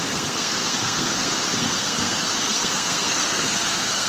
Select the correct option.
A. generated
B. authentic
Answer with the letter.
A